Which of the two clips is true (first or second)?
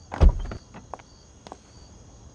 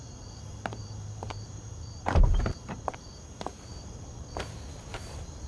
first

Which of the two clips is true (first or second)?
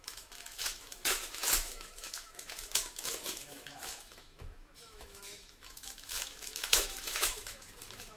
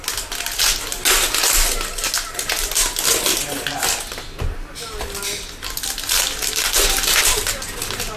second